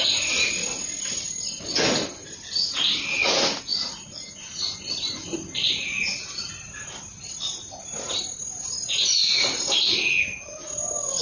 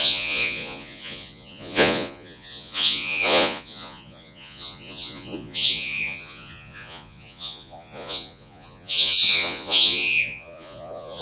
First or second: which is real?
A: first